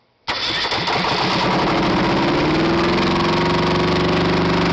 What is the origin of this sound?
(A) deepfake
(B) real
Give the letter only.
B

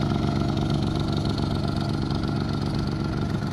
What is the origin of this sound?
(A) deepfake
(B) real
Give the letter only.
B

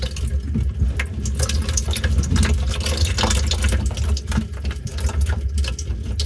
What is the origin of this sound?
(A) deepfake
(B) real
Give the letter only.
B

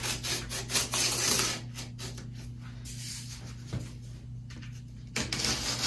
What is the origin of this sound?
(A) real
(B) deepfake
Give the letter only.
A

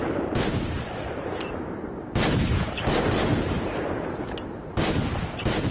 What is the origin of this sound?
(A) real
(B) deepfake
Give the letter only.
B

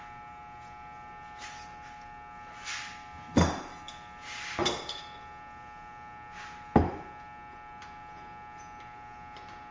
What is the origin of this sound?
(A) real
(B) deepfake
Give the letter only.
A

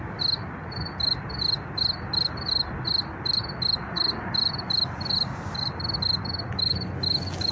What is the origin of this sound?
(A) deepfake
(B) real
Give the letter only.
B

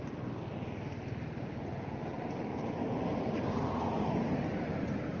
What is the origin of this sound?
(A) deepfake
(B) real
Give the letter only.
B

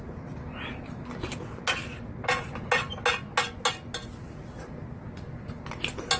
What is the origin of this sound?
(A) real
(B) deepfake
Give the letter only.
A